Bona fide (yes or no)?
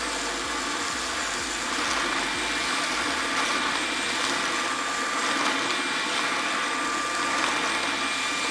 yes